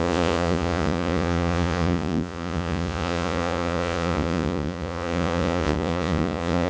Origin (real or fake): fake